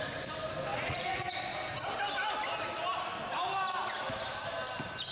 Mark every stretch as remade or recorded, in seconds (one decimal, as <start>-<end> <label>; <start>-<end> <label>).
0.0-0.7 recorded; 0.7-1.4 remade; 1.4-5.1 recorded